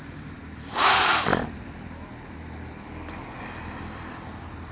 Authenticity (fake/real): real